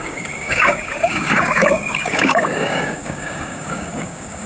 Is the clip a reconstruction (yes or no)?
yes